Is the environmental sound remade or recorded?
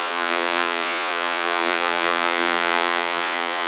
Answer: remade